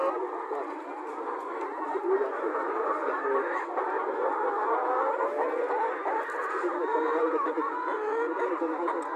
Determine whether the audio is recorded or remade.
recorded